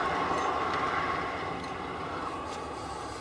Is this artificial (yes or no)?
no